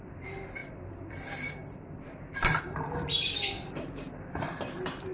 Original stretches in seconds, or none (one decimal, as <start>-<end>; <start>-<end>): none